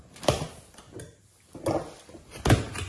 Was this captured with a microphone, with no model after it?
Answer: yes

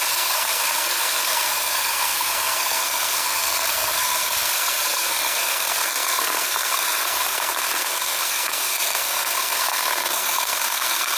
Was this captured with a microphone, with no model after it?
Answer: no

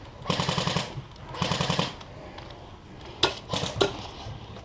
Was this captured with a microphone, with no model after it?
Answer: yes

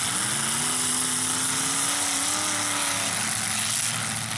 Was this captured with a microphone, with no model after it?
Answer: yes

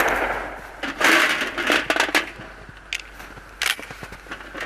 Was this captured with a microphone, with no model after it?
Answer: yes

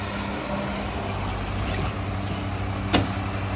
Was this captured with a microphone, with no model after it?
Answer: yes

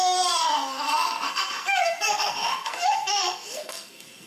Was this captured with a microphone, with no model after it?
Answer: no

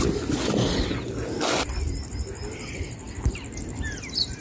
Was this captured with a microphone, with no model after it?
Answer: yes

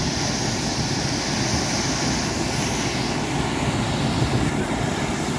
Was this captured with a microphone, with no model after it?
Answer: yes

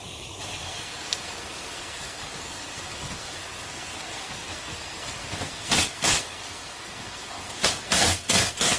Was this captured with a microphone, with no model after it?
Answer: no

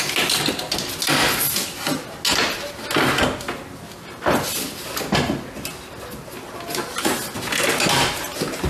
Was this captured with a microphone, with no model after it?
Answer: yes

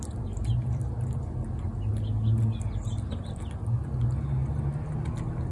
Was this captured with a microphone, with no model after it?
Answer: yes